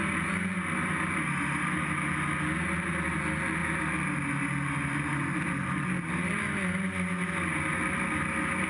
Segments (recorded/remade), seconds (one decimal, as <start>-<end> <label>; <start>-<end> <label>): 0.0-8.7 recorded